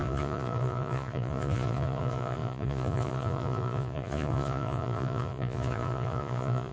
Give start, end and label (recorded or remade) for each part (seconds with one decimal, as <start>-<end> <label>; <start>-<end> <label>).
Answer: 0.0-6.7 remade